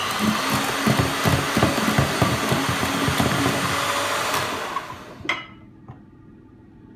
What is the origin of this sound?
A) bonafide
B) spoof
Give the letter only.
A